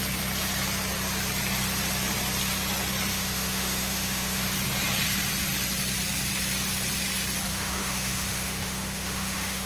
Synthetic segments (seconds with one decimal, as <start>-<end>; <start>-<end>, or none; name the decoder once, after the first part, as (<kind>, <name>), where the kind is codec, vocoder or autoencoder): 3.1-4.5 (autoencoder, DAC-VAE); 7.5-9.7